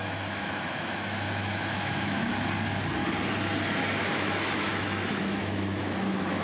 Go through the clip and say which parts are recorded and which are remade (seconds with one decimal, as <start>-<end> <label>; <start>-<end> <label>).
0.0-2.3 remade; 2.3-4.0 recorded; 4.0-6.4 remade